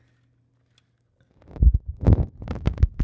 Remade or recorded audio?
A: recorded